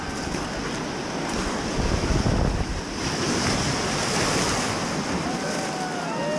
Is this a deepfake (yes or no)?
no